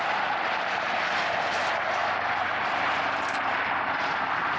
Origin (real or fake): real